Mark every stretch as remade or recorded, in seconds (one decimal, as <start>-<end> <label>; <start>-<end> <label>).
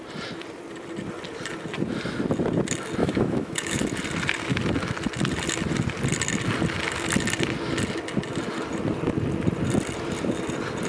0.0-3.0 recorded; 3.0-3.8 remade; 3.8-10.9 recorded